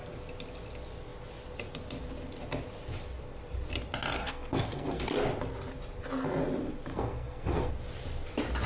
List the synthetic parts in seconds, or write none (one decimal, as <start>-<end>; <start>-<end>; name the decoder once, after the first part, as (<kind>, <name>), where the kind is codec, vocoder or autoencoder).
4.2-5.0 (codec, SNAC); 6.9-7.7